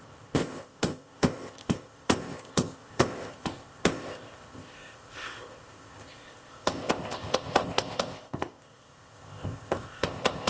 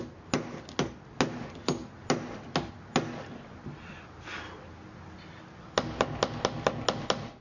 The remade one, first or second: first